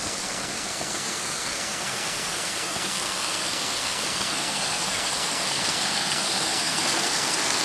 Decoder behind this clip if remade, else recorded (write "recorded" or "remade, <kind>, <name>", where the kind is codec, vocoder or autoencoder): remade, codec, SNAC